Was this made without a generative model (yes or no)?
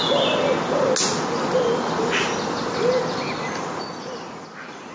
yes